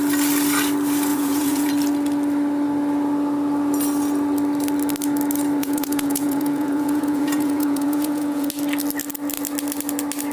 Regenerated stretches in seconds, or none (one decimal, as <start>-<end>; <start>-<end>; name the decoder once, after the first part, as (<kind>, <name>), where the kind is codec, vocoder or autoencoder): 1.1-1.7 (vocoder, Vocos); 5.6-8.5